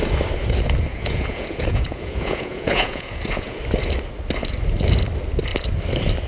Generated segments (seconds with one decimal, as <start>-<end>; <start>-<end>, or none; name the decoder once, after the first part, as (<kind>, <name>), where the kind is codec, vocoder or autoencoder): 0.9-3.6 (vocoder, Vocos)